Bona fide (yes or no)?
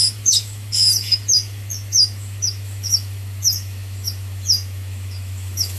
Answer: no